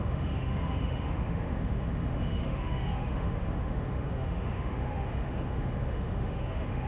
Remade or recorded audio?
remade